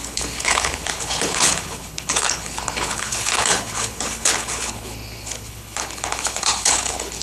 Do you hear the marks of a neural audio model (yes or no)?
yes